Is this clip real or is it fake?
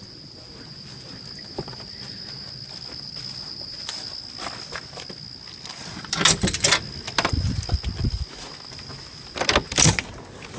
real